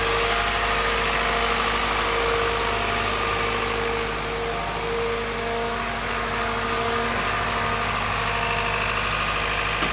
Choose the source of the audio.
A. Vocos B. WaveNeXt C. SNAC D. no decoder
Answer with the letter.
D